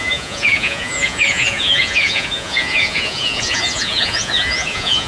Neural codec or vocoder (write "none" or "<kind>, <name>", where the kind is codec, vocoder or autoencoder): vocoder, Vocos